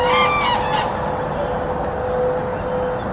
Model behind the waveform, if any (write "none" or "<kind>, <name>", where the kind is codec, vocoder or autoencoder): none